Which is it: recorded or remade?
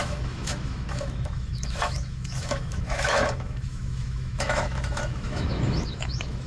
remade